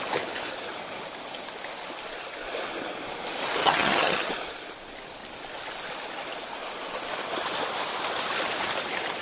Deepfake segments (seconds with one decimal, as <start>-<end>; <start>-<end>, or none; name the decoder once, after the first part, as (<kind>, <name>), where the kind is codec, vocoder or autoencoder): 3.6-4.3 (vocoder, HiFi-GAN)